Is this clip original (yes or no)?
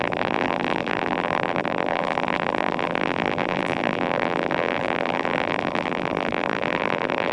no